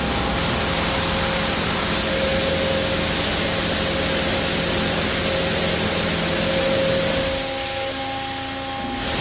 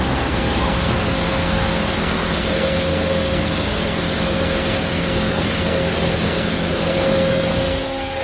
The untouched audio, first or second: first